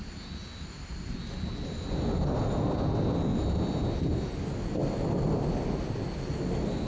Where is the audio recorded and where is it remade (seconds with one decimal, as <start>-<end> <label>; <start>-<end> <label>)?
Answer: 0.0-6.9 recorded